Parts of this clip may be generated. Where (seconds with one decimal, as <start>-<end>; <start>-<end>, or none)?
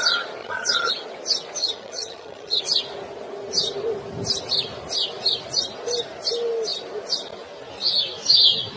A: 0.4-0.9; 1.6-2.6